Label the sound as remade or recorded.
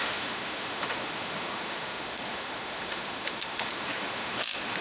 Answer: remade